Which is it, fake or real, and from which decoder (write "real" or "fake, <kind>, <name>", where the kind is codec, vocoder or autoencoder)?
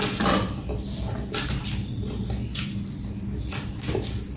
real